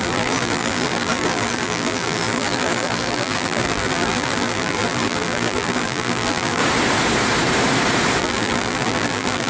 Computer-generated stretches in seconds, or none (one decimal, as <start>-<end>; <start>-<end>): 0.0-6.6; 8.2-9.5